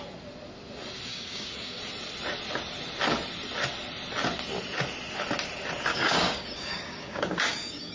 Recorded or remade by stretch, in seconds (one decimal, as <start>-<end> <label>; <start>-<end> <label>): 0.0-1.1 recorded; 1.1-1.8 remade; 1.8-5.9 recorded; 5.9-7.9 remade